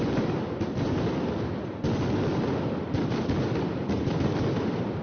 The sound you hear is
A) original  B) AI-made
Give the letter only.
A